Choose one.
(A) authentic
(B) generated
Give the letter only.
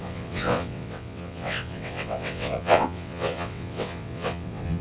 B